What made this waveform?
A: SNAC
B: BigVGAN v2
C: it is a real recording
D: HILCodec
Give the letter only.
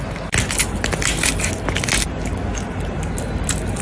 C